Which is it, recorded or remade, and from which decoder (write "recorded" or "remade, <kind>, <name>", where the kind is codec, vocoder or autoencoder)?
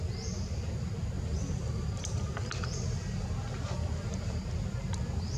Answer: recorded